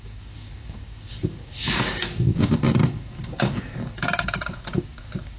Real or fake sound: fake